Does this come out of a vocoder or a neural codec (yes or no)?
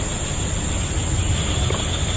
no